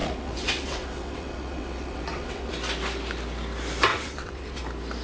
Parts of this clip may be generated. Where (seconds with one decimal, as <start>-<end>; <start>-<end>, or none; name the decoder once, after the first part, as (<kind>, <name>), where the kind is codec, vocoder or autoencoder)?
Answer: 0.0-2.5 (vocoder, WaveNeXt); 3.9-4.6